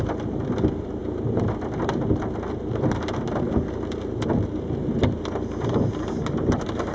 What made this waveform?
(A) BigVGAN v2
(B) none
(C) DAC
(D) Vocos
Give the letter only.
B